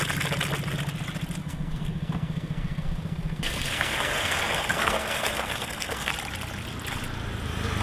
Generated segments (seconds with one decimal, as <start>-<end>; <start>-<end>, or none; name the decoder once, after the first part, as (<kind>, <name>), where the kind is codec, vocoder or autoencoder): 1.4-6.1 (codec, SNAC)

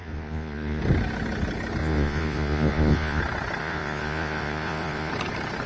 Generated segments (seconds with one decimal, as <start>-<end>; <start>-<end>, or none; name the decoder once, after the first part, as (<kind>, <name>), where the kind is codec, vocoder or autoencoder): 0.0-0.8 (vocoder, Vocos); 1.8-3.2; 3.6-5.1

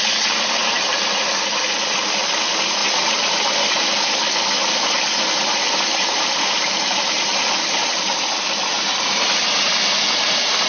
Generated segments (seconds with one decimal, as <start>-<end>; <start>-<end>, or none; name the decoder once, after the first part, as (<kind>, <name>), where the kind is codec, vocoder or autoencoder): 0.6-1.3 (vocoder, BigVGAN v2); 2.8-4.0; 5.9-10.7